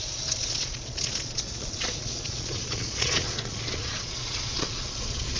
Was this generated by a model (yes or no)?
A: yes